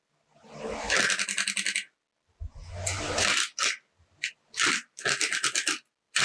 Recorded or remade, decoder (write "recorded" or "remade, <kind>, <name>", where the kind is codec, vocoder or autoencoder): recorded